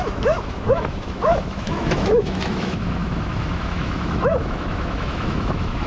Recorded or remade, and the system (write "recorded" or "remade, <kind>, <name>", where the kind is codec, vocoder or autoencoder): remade, autoencoder, DAC-VAE